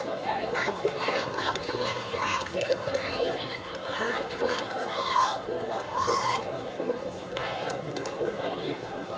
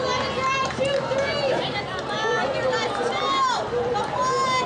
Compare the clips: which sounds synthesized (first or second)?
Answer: first